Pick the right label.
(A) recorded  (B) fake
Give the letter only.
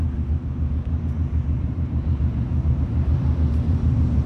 B